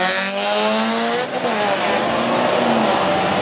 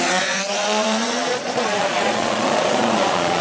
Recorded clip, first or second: first